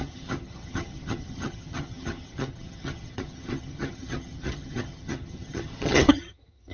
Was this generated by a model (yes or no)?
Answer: yes